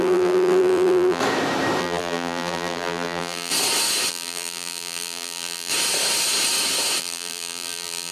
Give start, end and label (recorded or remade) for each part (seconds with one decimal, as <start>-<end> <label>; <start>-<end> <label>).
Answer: 0.0-1.2 remade; 1.2-1.8 recorded; 1.8-3.5 remade; 3.5-4.1 recorded; 4.1-5.7 remade; 5.7-7.0 recorded; 7.0-8.1 remade